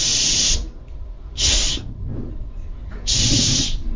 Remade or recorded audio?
recorded